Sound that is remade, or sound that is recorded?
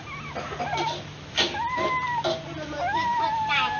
recorded